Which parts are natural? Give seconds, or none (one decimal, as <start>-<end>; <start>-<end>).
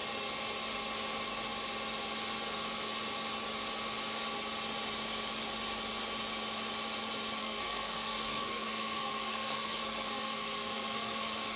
0.0-7.4